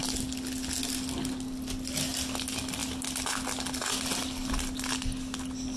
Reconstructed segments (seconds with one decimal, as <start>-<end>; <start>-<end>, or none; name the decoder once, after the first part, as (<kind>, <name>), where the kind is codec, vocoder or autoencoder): none